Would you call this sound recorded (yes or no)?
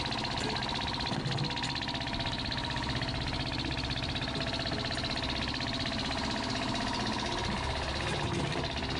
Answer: yes